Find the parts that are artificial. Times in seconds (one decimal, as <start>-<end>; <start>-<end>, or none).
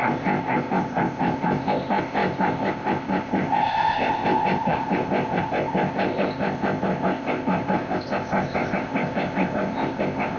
0.0-10.4